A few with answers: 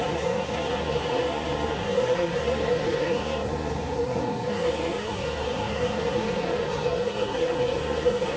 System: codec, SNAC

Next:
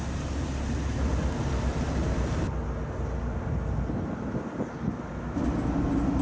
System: none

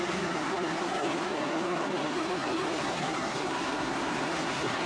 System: codec, SNAC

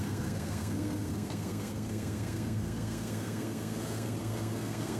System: codec, SNAC